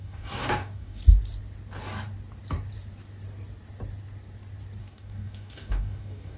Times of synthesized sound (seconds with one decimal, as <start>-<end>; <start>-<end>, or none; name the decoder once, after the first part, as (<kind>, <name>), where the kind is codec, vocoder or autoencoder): 0.0-1.0 (codec, DAC); 4.8-6.4

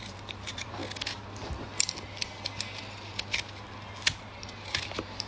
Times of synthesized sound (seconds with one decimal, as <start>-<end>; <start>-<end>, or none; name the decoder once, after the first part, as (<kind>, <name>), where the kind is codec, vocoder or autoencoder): 0.0-0.8 (vocoder, BigVGAN v2); 4.0-5.3

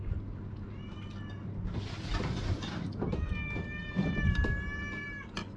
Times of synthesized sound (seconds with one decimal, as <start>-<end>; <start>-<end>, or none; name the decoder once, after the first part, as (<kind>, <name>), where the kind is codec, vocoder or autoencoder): none

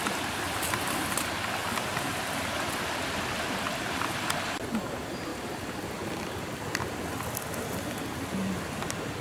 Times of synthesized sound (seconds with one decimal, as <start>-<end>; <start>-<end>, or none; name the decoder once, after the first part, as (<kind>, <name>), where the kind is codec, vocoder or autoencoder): 5.3-5.9 (vocoder, BigVGAN v2)